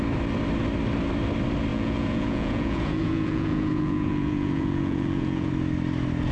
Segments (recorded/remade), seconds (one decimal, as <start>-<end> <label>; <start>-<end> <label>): 0.0-1.7 recorded; 1.7-5.5 remade; 5.5-6.3 recorded